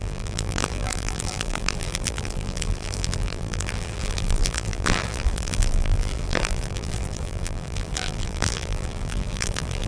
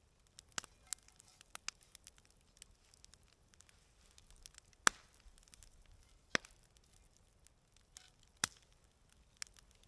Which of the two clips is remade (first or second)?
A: first